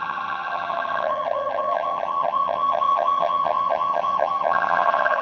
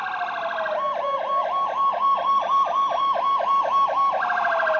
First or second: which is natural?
second